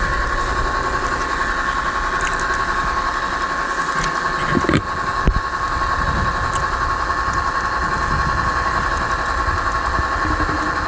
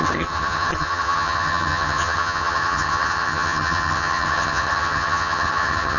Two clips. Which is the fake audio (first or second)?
second